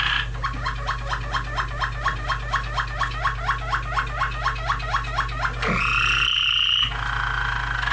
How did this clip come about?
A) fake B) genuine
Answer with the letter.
B